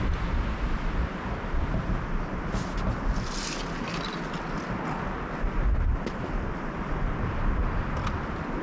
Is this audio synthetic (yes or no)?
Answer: no